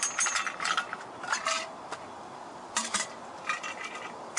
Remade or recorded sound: recorded